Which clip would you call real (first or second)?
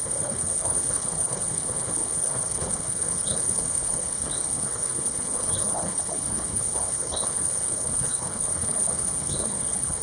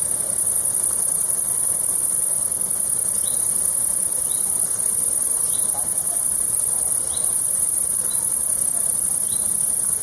second